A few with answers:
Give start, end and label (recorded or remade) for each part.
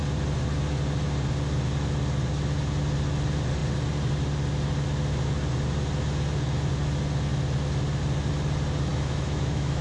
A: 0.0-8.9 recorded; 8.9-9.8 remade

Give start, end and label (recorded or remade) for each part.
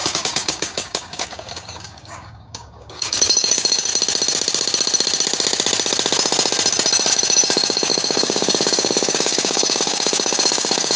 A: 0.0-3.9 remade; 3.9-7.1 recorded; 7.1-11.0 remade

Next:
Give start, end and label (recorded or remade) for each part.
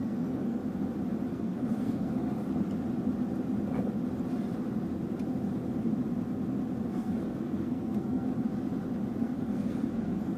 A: 0.0-0.6 remade; 0.6-1.3 recorded; 1.3-2.4 remade; 2.4-6.9 recorded; 6.9-8.3 remade; 8.3-9.2 recorded; 9.2-10.4 remade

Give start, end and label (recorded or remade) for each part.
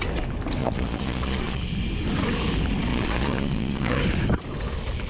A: 0.0-0.6 recorded; 0.6-1.6 remade; 1.6-2.9 recorded; 2.9-4.0 remade; 4.0-5.1 recorded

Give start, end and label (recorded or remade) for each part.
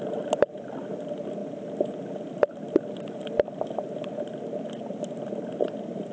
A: 0.0-6.1 recorded